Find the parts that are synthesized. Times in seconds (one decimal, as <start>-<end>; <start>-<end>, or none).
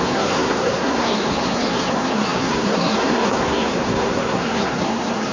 0.0-5.3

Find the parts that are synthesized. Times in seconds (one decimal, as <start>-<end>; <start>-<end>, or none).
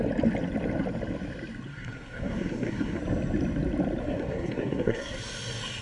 1.7-3.0; 4.0-5.2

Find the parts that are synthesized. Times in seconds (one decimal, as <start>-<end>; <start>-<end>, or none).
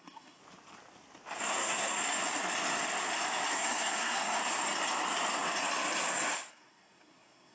0.0-0.4; 1.5-2.0; 3.5-4.4; 6.5-7.5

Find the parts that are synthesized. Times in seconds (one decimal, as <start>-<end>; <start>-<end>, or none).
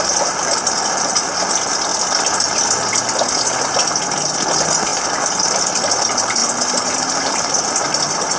none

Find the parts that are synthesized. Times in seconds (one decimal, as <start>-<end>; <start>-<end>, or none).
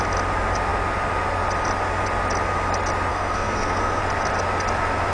3.1-4.0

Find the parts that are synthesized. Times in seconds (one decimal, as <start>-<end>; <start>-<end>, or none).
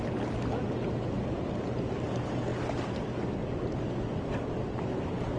none